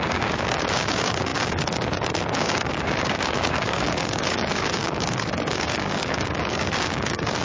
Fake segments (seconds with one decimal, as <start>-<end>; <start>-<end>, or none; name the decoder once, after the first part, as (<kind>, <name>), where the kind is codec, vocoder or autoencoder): 0.0-7.4 (codec, DAC)